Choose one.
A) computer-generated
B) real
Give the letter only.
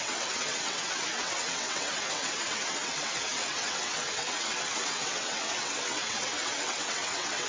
A